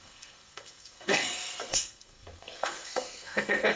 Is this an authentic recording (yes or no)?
no